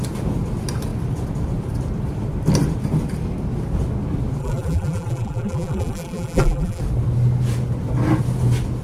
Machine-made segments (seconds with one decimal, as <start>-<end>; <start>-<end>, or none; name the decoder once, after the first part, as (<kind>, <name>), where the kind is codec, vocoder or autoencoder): 4.4-6.8 (vocoder, BigVGAN v2)